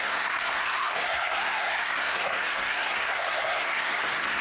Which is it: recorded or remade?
remade